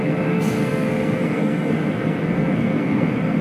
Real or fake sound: fake